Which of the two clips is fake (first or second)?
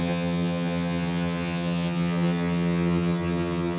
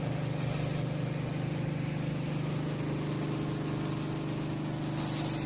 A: first